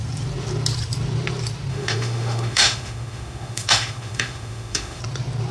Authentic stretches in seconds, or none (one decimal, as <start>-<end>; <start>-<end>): 0.0-1.7; 5.0-5.5